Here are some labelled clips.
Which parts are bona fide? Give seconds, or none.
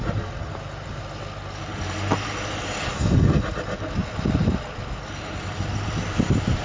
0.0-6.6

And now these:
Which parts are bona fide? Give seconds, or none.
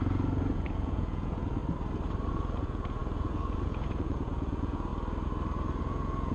1.6-2.3; 4.9-5.8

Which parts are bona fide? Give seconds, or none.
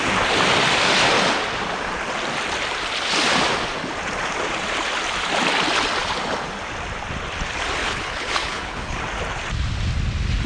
0.0-7.8; 9.0-10.5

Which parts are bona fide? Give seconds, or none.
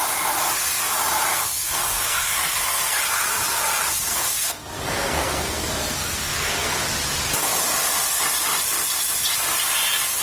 0.0-1.3; 3.0-4.1; 6.8-10.2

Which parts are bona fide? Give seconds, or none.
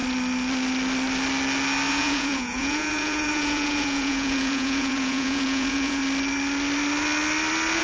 0.0-1.9; 6.0-7.8